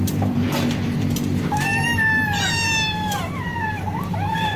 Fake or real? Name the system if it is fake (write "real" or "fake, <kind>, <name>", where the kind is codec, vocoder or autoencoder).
fake, vocoder, BigVGAN v2